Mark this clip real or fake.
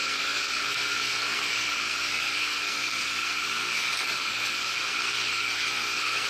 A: fake